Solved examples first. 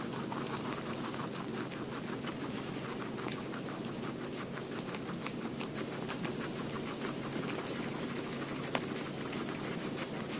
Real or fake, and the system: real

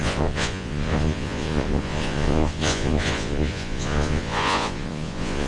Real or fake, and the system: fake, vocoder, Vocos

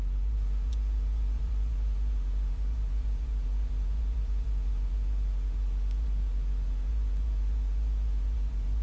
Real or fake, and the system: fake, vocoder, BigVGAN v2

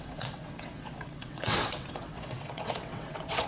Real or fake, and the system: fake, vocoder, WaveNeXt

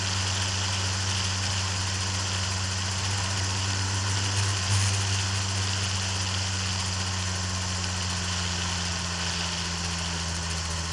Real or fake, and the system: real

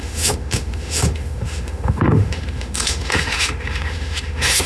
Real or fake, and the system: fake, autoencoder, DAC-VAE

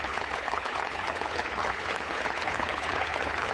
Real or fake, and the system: fake, codec, HILCodec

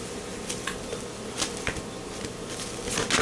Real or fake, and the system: real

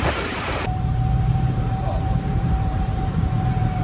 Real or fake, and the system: fake, vocoder, BigVGAN v2